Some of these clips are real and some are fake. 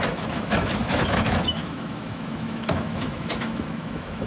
fake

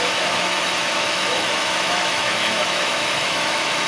fake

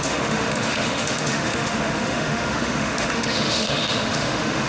fake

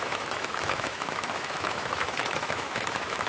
fake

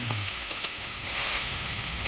fake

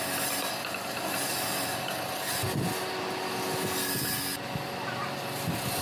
real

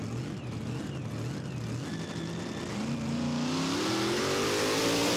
real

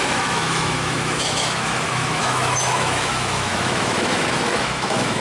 fake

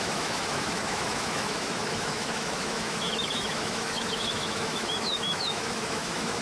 fake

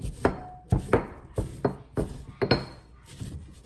real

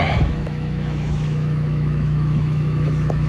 fake